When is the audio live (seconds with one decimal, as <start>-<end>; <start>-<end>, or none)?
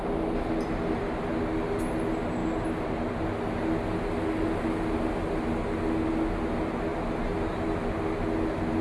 0.0-8.8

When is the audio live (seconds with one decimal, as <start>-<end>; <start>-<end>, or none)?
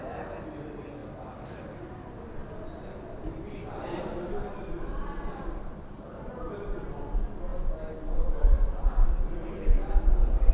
0.0-4.4; 6.5-10.5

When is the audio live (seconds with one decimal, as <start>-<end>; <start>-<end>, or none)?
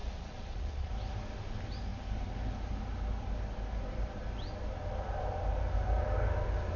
0.9-6.8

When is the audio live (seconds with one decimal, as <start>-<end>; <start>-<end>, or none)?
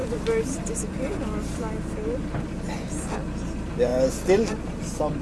3.9-4.6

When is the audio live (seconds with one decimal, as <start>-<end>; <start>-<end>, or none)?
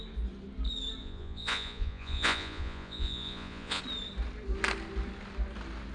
0.0-1.0; 3.8-5.9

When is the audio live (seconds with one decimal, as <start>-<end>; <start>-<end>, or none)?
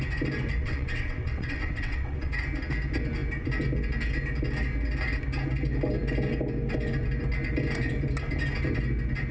0.0-0.6; 2.3-9.3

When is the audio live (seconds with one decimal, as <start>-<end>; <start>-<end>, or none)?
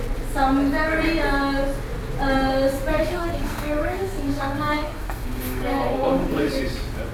0.0-2.9; 6.6-7.1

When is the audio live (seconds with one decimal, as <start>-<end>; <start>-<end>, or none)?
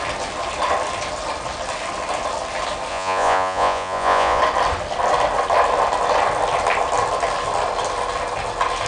0.0-2.9; 4.4-8.9